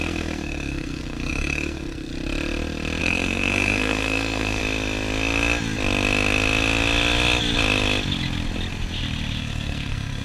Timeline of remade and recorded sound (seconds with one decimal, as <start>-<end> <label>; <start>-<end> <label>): 0.0-2.1 remade; 2.1-3.0 recorded; 3.0-4.6 remade; 4.6-9.4 recorded; 9.4-10.2 remade